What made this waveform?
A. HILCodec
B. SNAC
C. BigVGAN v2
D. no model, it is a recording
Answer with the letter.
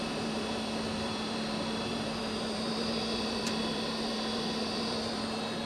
C